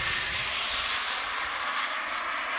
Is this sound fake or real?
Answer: real